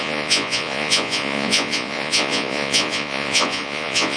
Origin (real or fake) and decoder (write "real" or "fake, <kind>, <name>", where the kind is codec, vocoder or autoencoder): fake, vocoder, Vocos